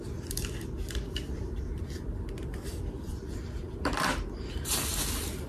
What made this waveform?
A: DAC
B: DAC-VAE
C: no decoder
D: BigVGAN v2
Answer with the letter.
D